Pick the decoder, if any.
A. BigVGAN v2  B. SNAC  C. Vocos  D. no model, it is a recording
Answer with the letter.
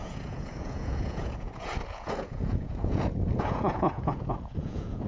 C